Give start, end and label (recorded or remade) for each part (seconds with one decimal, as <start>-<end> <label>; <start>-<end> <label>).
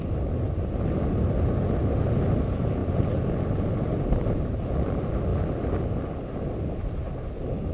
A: 0.0-7.7 recorded